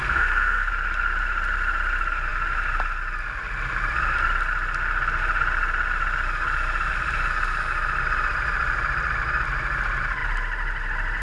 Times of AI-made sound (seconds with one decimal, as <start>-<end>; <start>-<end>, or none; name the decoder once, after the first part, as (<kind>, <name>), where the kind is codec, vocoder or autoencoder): 0.0-0.7 (codec, SNAC)